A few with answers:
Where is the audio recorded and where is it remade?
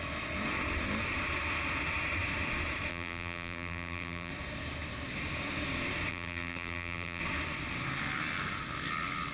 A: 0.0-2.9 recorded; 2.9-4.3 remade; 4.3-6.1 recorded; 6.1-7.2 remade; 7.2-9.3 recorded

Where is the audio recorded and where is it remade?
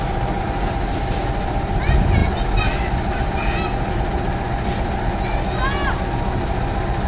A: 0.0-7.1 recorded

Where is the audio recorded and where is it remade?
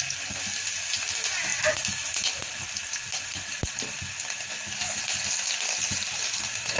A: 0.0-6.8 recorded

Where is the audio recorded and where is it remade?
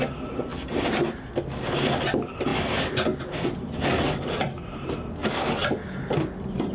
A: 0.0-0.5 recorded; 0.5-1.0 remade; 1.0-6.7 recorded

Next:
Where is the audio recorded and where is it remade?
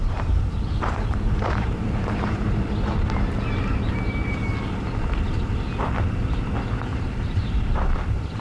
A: 0.0-2.5 remade; 2.5-6.9 recorded; 6.9-8.4 remade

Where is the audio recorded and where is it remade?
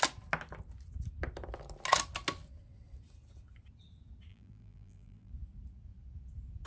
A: 0.0-4.3 recorded; 4.3-5.3 remade; 5.3-6.7 recorded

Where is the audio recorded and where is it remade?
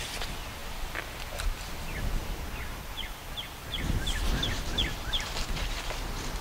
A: 0.0-6.4 recorded